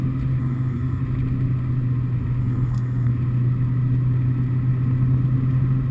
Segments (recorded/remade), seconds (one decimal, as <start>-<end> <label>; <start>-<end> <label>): 0.0-0.4 recorded; 0.4-1.0 remade; 1.0-2.4 recorded; 2.4-3.1 remade; 3.1-5.9 recorded